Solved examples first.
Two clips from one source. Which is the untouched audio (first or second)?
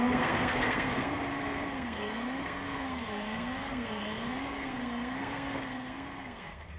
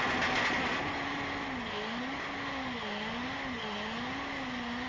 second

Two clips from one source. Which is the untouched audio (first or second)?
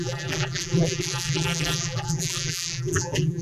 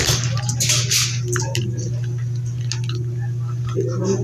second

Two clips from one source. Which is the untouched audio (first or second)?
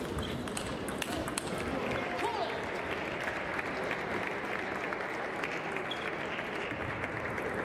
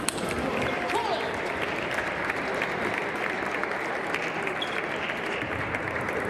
first